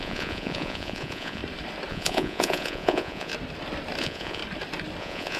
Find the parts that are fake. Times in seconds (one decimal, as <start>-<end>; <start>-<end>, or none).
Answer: 0.0-1.4; 1.9-3.3; 4.0-4.4; 5.0-5.4